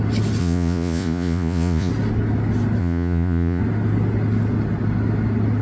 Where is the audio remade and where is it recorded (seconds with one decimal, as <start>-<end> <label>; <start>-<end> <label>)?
0.0-0.4 recorded; 0.4-1.9 remade; 1.9-2.8 recorded; 2.8-3.6 remade; 3.6-5.6 recorded